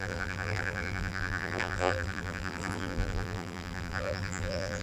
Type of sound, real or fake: fake